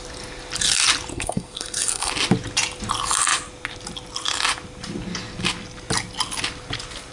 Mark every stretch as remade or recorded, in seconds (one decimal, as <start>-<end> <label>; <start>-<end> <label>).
0.0-1.1 recorded; 1.1-2.1 remade; 2.1-7.1 recorded